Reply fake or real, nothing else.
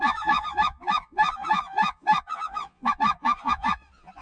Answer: fake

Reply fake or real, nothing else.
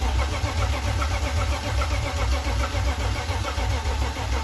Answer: fake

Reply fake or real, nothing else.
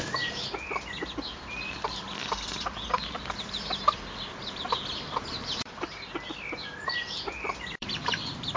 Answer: fake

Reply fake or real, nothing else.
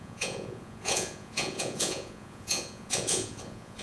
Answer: fake